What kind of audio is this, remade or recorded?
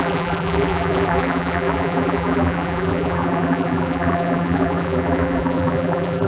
remade